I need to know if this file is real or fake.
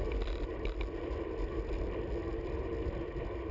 real